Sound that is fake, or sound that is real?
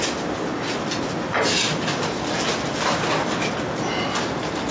real